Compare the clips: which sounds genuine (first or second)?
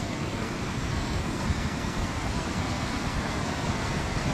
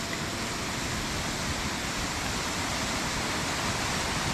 second